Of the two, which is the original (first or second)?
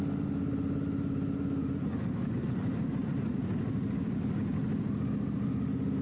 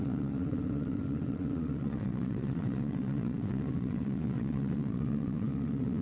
first